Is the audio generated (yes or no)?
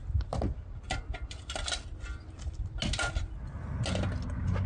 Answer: no